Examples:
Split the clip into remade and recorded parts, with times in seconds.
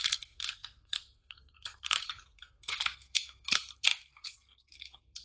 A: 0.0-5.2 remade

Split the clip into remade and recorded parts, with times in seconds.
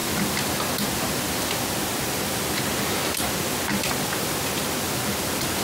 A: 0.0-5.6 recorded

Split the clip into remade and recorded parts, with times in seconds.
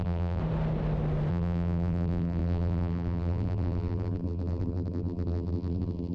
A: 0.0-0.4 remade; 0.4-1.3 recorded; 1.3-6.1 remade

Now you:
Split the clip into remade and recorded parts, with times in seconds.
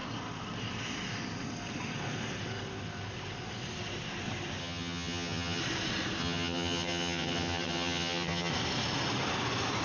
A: 0.0-4.6 recorded; 4.6-5.6 remade; 5.6-6.2 recorded; 6.2-8.5 remade; 8.5-9.8 recorded